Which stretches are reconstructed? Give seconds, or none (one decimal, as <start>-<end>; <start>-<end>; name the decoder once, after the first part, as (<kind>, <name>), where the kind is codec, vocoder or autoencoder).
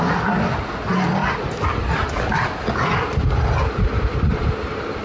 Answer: none